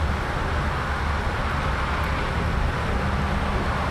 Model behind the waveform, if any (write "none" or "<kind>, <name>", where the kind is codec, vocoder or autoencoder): none